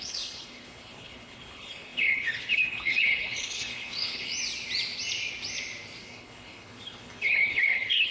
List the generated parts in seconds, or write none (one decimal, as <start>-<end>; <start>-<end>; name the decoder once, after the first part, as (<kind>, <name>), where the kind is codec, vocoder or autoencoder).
0.0-4.3 (codec, HILCodec); 6.0-8.1